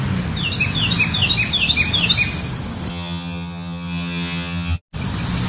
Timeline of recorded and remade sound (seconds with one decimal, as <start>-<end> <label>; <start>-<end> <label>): 0.0-2.9 recorded; 2.9-4.8 remade; 4.8-5.5 recorded